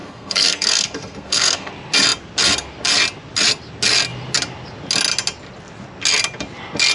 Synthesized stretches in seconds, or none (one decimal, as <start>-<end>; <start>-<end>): 0.0-1.7